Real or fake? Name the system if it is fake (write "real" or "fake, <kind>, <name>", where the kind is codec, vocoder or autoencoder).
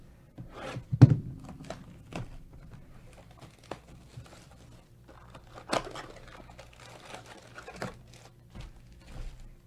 real